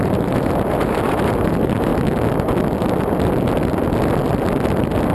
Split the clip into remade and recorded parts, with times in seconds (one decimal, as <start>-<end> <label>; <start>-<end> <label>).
0.0-1.9 remade; 1.9-5.1 recorded